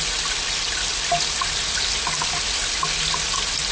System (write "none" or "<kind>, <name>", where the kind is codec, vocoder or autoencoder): none